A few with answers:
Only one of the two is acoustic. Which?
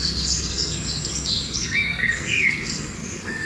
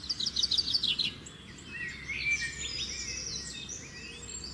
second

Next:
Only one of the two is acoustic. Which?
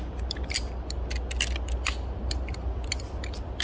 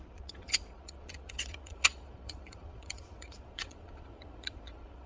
first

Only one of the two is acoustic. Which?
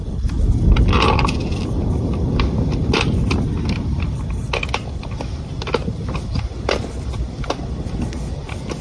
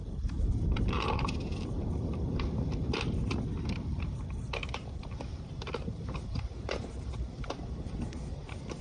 first